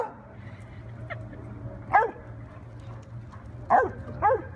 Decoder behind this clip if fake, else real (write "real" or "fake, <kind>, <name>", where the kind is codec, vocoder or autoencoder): real